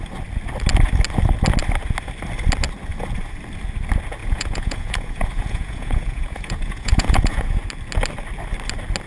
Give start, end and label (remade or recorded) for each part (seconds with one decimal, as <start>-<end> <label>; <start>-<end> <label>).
0.0-4.2 recorded; 4.2-7.6 remade; 7.6-9.1 recorded